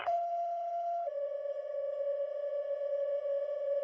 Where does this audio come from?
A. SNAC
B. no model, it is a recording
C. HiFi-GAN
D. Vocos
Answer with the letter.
C